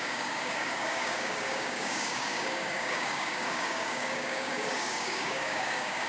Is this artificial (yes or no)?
yes